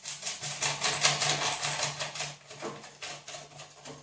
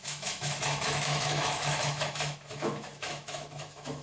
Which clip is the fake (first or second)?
second